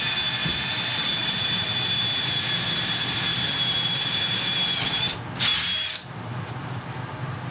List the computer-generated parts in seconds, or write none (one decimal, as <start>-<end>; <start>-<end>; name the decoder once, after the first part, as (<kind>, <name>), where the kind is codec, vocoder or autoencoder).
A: 0.4-2.2 (vocoder, BigVGAN v2); 3.3-4.5; 5.5-6.8